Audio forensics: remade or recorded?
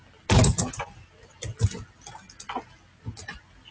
recorded